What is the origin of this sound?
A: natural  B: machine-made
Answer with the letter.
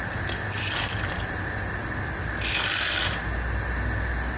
A